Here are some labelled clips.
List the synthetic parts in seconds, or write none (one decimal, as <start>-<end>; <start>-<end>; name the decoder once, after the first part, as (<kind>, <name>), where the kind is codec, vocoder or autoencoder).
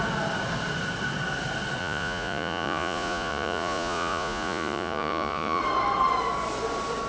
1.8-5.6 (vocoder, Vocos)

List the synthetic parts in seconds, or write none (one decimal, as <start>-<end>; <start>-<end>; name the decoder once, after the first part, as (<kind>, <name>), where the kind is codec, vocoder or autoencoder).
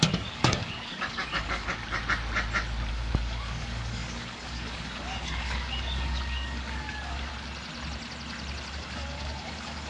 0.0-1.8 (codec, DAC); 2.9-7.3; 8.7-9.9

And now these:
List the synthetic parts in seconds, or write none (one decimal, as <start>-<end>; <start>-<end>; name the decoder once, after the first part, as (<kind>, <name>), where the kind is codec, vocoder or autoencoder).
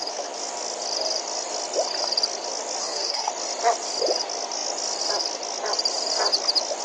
2.8-3.3 (codec, DAC)